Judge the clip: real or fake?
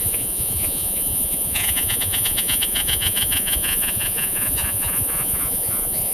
fake